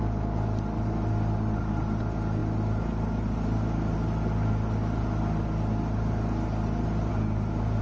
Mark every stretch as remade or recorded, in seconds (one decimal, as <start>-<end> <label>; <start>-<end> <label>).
0.0-7.8 recorded